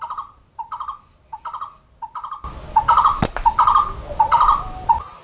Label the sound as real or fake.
real